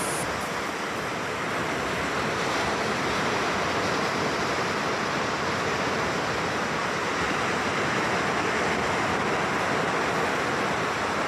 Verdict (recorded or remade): recorded